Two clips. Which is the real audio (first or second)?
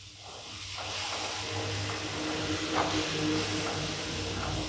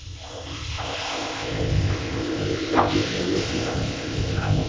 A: first